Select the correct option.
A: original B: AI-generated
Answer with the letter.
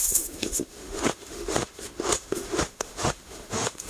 B